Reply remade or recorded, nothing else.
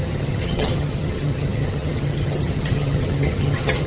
remade